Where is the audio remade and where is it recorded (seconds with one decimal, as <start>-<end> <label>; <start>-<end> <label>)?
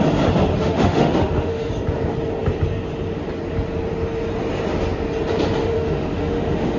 0.0-0.5 recorded; 0.5-1.7 remade; 1.7-5.6 recorded; 5.6-6.8 remade